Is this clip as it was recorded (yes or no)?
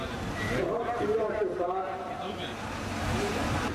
no